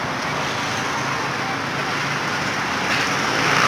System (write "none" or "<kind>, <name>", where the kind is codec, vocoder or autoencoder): none